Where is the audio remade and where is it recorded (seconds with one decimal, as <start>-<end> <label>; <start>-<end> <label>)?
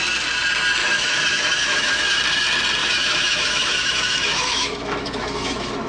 0.0-0.8 recorded; 0.8-2.2 remade; 2.2-2.8 recorded; 2.8-5.9 remade